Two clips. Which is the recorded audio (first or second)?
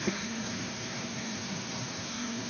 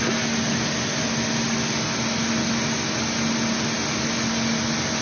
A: second